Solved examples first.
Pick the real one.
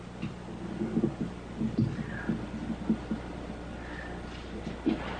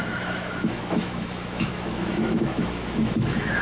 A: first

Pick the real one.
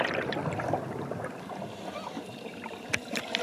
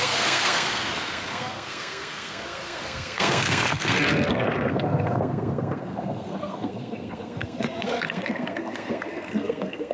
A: first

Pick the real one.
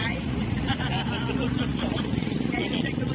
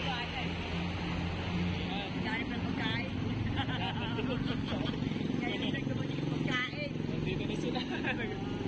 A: second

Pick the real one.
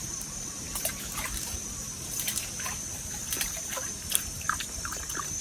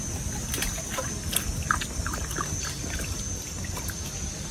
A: second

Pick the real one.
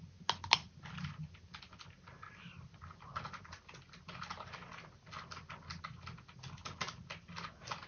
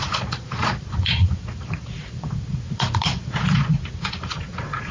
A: first